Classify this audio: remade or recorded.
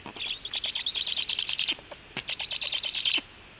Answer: recorded